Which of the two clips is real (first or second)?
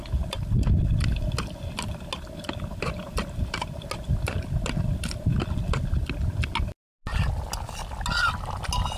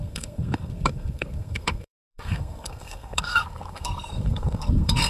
first